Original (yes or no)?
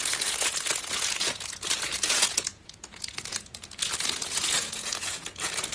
no